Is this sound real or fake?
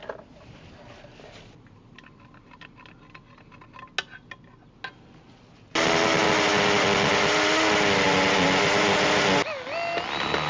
real